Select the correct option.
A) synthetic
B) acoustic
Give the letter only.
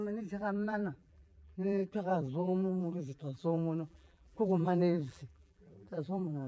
A